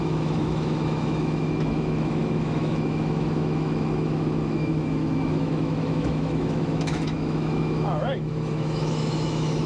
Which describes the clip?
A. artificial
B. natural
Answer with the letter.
A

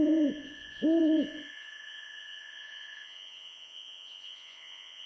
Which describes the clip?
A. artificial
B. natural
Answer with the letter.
A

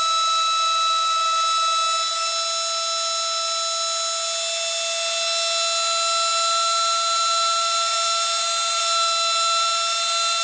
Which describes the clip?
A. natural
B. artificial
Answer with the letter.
A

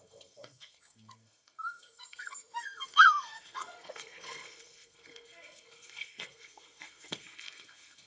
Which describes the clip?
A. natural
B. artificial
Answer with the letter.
B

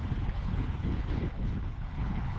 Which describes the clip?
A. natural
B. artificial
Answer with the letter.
B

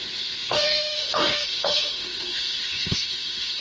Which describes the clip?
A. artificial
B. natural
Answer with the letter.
A